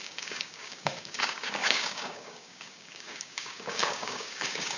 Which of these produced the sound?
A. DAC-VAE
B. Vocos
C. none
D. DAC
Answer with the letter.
D